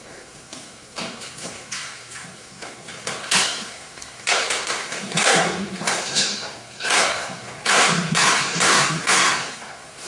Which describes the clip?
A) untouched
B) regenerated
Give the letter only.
B